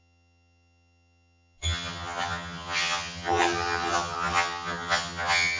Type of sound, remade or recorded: remade